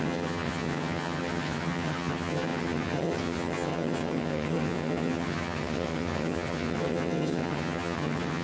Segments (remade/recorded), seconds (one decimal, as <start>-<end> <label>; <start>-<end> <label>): 0.0-8.4 remade